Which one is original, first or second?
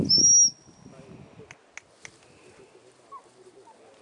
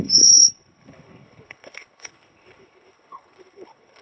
first